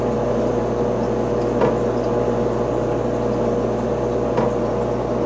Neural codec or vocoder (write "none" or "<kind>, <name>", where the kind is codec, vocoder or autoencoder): none